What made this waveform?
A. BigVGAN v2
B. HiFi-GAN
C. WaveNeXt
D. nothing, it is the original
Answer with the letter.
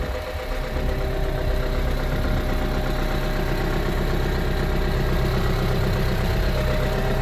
D